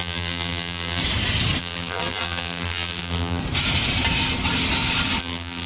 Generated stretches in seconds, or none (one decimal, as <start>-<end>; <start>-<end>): 0.0-1.0; 1.6-3.4; 5.2-5.7